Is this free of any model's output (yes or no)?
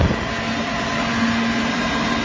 yes